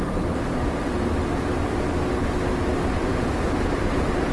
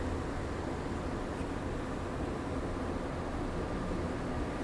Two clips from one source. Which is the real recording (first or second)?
second